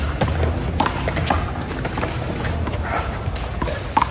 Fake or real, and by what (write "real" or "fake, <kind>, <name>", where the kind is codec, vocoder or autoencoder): real